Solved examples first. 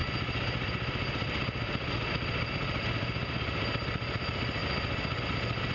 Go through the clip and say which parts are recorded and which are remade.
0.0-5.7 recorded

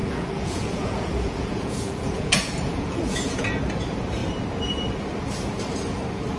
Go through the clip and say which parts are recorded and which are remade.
0.0-3.6 remade; 3.6-6.4 recorded

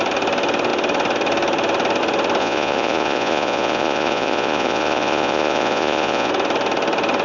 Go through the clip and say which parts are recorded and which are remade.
0.0-2.4 recorded; 2.4-6.3 remade; 6.3-7.2 recorded

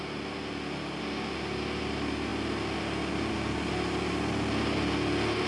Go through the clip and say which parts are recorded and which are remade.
0.0-5.5 recorded

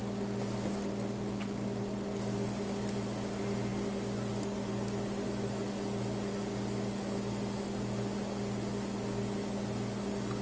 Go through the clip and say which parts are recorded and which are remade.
0.0-10.4 recorded

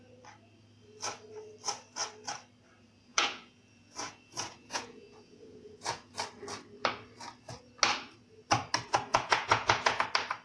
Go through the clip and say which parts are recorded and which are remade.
0.0-3.1 recorded; 3.1-6.1 remade; 6.1-9.1 recorded; 9.1-10.0 remade; 10.0-10.4 recorded

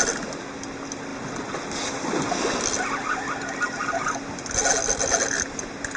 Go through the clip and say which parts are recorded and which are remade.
0.0-6.0 recorded